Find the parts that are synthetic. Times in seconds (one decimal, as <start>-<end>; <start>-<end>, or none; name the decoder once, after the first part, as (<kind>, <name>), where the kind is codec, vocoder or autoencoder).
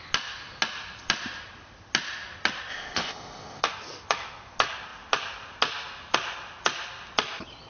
2.7-3.6 (codec, ZipCodec)